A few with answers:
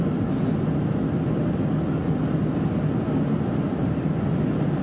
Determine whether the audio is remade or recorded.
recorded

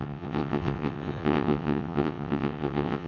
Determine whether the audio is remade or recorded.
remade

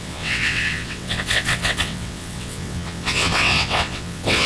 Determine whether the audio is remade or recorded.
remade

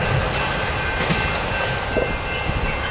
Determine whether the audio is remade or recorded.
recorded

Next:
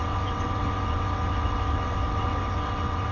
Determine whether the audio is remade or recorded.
remade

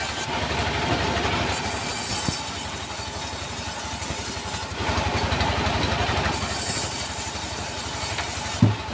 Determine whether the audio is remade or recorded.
recorded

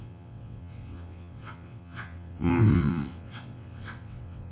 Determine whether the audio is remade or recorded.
remade